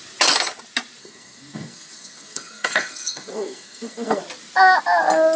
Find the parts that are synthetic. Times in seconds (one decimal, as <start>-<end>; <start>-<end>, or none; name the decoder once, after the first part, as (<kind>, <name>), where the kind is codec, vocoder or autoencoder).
1.0-4.2 (codec, SNAC)